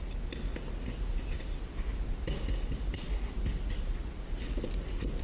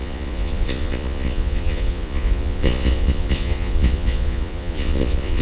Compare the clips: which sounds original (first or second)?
first